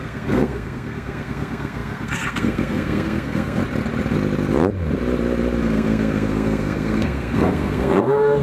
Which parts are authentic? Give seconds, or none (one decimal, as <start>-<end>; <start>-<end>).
3.6-5.6